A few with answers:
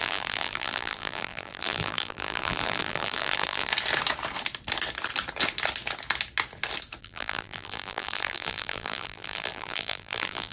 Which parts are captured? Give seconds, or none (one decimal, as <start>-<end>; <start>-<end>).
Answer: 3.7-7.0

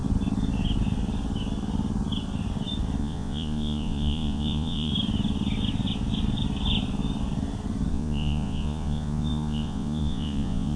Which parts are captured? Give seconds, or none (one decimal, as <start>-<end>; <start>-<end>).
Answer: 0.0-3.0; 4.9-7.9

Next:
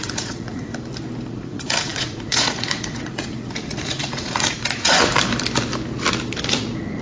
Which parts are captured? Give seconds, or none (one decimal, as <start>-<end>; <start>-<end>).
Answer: 0.7-1.3; 5.1-6.5

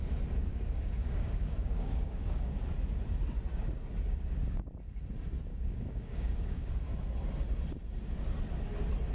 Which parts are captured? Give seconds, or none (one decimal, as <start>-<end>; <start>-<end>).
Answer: 0.0-0.5; 2.6-5.5; 6.7-9.1